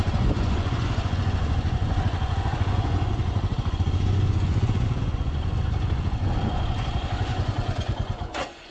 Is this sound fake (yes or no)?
yes